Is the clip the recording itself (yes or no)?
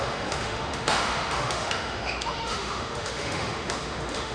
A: no